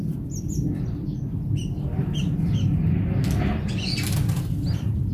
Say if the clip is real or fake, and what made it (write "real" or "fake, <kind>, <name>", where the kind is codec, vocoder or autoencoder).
real